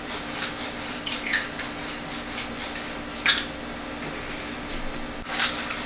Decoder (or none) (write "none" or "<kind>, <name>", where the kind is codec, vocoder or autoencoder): none